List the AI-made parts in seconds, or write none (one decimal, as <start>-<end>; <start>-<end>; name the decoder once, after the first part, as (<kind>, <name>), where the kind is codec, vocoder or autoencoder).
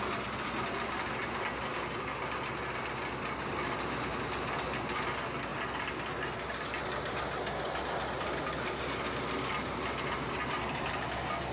none